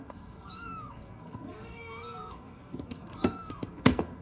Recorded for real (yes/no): no